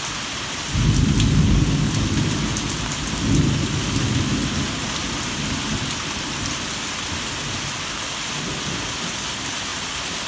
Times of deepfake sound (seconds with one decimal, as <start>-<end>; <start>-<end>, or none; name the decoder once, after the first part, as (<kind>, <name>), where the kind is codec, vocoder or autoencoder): none